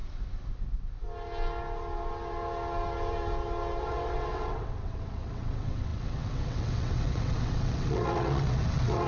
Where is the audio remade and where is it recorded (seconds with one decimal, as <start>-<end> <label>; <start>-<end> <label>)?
0.0-3.8 recorded; 3.8-9.1 remade